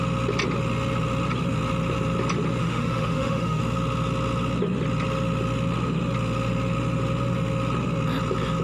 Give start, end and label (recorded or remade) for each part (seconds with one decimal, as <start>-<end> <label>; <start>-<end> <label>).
0.0-2.6 recorded; 2.6-3.6 remade; 3.6-8.6 recorded